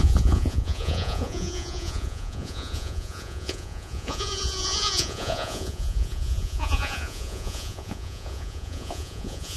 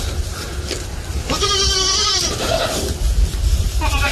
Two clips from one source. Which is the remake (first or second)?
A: first